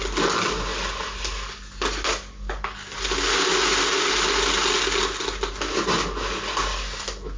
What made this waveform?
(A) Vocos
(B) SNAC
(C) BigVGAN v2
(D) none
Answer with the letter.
D